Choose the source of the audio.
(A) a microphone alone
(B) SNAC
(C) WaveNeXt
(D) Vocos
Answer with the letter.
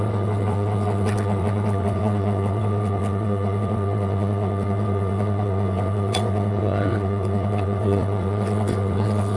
C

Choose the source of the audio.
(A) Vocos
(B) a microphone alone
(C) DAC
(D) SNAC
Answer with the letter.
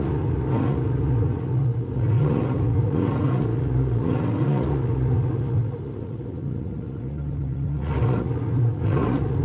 A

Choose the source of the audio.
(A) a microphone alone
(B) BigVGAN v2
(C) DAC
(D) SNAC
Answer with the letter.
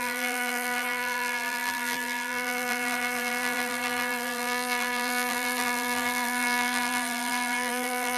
B